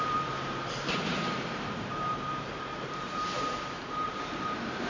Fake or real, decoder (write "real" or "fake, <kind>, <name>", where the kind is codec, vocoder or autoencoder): fake, vocoder, BigVGAN v2